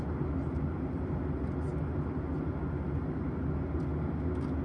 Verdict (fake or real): real